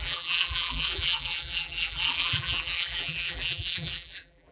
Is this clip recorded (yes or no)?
no